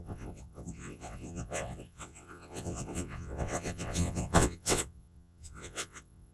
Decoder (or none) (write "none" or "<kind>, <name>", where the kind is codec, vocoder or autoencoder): vocoder, WaveNeXt